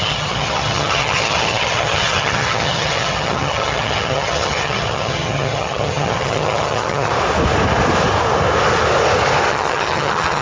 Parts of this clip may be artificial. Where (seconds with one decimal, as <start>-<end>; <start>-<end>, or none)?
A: 0.0-7.1; 9.5-10.4